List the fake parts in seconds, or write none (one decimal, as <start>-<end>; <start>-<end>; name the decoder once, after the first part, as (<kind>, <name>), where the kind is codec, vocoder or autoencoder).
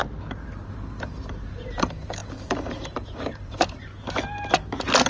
0.7-3.9 (vocoder, BigVGAN v2)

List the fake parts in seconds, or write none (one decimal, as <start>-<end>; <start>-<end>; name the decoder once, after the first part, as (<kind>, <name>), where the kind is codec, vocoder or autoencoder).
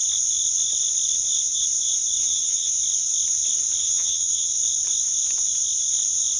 2.2-2.7 (vocoder, HiFi-GAN); 3.8-4.5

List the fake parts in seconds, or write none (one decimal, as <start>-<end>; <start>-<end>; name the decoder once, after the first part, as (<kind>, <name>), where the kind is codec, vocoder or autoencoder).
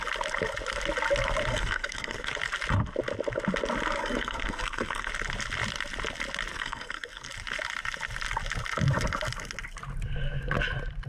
1.5-2.3 (codec, SNAC); 4.0-5.1; 6.5-7.3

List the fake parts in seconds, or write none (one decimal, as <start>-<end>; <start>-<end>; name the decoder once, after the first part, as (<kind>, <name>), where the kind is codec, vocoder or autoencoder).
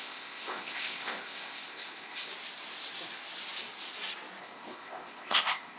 0.0-2.3 (codec, ZipCodec); 4.4-5.8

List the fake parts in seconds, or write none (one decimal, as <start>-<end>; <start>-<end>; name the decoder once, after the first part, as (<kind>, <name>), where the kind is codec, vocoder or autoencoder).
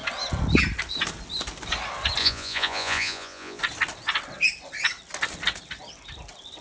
2.2-3.6 (vocoder, Vocos)